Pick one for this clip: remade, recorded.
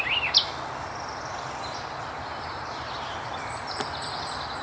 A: remade